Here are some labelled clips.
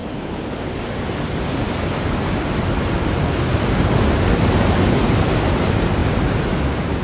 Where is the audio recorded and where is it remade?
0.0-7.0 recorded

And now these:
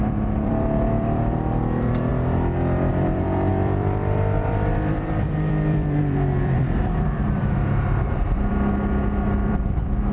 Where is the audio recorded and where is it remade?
0.0-2.1 remade; 2.1-2.9 recorded; 2.9-10.1 remade

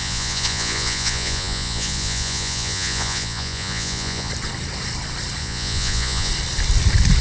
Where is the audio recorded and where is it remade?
0.0-4.3 remade; 4.3-5.4 recorded; 5.4-6.3 remade; 6.3-7.2 recorded

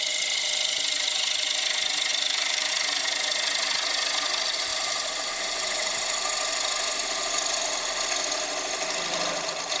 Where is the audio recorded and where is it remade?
0.0-2.1 recorded; 2.1-2.7 remade; 2.7-4.7 recorded; 4.7-5.3 remade; 5.3-9.8 recorded

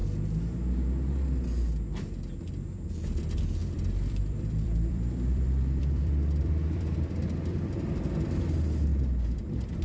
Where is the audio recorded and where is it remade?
0.0-3.6 recorded; 3.6-7.8 remade; 7.8-8.9 recorded; 8.9-9.8 remade

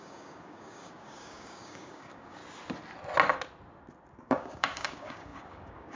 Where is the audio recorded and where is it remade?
0.0-2.4 remade; 2.4-4.2 recorded; 4.2-5.9 remade

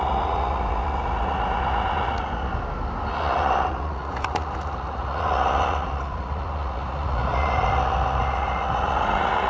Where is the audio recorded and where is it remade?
0.0-2.5 remade; 2.5-3.1 recorded; 3.1-9.5 remade

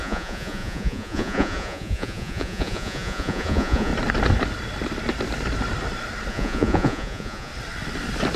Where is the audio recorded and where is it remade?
0.0-3.9 remade; 3.9-6.3 recorded; 6.3-7.5 remade; 7.5-8.4 recorded